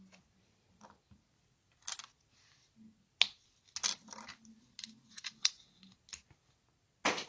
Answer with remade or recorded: recorded